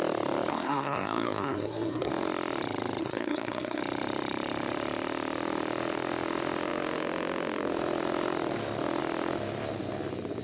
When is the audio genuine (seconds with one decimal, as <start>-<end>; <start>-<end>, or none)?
0.0-0.5; 2.1-3.0; 3.8-10.4